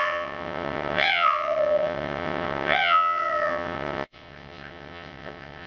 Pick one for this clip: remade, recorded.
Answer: remade